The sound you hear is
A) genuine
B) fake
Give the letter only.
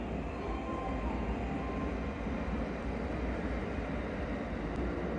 A